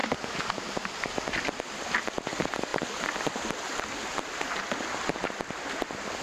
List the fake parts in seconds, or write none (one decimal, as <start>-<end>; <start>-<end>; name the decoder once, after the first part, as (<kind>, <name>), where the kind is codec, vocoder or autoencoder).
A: none